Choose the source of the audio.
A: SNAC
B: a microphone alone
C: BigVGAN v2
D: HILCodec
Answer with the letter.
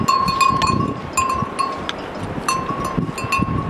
B